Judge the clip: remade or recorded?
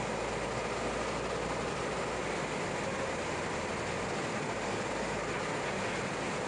recorded